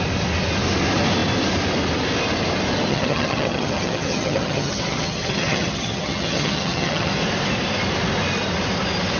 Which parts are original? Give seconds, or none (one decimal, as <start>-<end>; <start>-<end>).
0.0-2.9; 7.1-9.2